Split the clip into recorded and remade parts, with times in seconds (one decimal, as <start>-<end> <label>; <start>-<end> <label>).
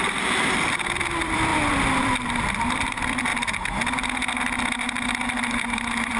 0.0-3.3 remade; 3.3-5.4 recorded; 5.4-6.2 remade